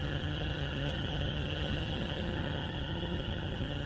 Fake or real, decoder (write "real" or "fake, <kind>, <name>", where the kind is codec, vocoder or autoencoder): fake, vocoder, HiFi-GAN